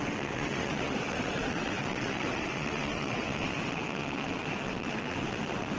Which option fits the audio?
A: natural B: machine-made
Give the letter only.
B